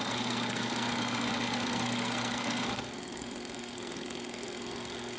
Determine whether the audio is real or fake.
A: fake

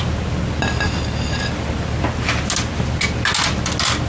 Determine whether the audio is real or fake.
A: real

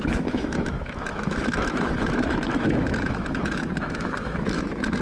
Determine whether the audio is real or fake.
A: fake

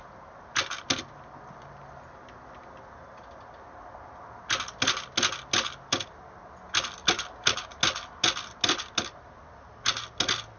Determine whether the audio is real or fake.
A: real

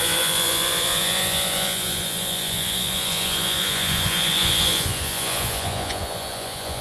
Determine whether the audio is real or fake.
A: fake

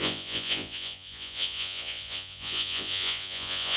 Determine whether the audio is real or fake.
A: fake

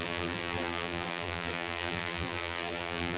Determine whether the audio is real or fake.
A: fake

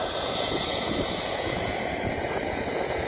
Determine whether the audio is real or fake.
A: fake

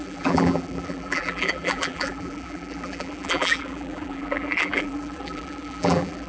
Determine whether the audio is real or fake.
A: fake